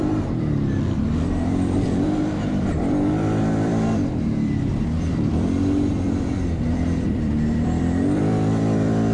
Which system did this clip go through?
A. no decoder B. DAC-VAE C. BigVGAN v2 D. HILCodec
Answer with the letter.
C